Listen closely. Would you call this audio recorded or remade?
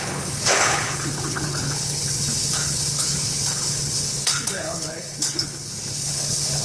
remade